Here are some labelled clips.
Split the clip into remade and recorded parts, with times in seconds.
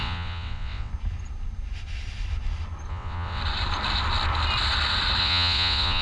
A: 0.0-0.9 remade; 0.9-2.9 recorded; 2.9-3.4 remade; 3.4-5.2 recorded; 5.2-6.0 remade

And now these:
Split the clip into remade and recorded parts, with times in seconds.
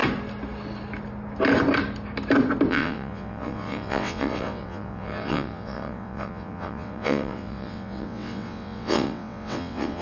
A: 0.0-2.7 recorded; 2.7-10.0 remade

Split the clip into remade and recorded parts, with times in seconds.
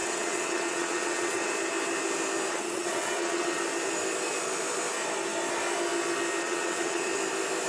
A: 0.0-1.5 remade; 1.5-2.5 recorded; 2.5-3.6 remade; 3.6-6.4 recorded; 6.4-7.1 remade; 7.1-7.7 recorded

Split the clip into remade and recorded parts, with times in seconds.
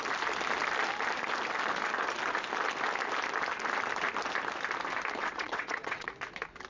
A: 0.0-5.2 recorded; 5.2-6.1 remade; 6.1-6.7 recorded